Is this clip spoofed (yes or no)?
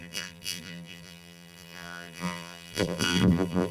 yes